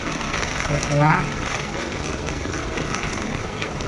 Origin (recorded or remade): remade